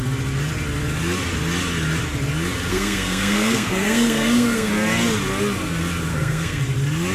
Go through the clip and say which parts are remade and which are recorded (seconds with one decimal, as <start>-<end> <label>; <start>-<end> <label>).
0.0-2.7 recorded; 2.7-4.7 remade; 4.7-6.1 recorded; 6.1-6.6 remade; 6.6-7.1 recorded